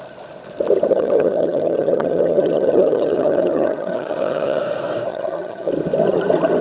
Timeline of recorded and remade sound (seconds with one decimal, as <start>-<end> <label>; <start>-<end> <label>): 0.0-0.9 recorded; 0.9-4.6 remade; 4.6-5.1 recorded; 5.1-5.7 remade; 5.7-6.6 recorded